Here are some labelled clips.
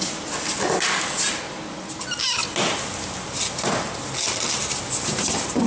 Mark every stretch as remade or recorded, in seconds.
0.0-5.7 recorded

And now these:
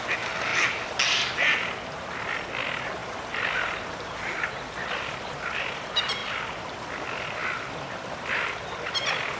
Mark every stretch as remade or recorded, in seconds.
0.0-3.0 recorded; 3.0-5.7 remade; 5.7-6.2 recorded; 6.2-6.8 remade; 6.8-7.4 recorded; 7.4-9.4 remade

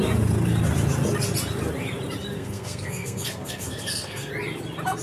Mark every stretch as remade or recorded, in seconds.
0.0-2.3 recorded; 2.3-4.3 remade; 4.3-5.0 recorded

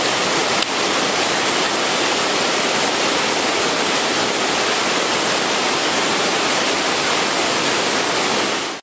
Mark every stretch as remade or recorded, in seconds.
0.0-8.8 recorded

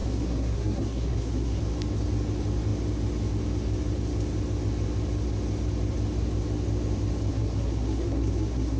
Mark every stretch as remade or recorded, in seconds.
0.0-1.6 remade; 1.6-7.3 recorded; 7.3-8.8 remade

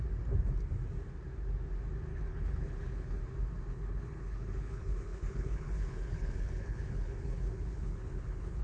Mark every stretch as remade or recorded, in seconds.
0.0-2.1 recorded; 2.1-3.2 remade; 3.2-3.7 recorded; 3.7-8.6 remade